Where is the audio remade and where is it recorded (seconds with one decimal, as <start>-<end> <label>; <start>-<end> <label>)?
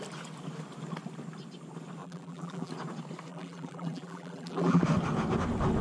0.0-2.0 recorded; 2.0-2.7 remade; 2.7-3.3 recorded; 3.3-4.8 remade; 4.8-5.8 recorded